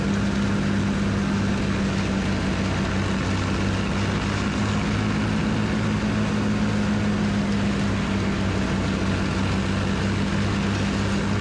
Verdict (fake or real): real